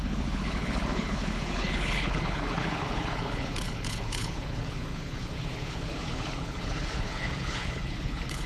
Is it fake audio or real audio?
fake